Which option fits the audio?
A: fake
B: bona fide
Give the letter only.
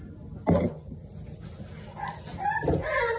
B